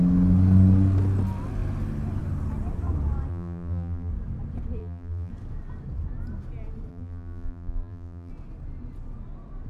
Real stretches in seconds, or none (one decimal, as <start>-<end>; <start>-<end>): 0.0-3.3; 4.1-4.8; 5.3-6.9; 8.3-9.7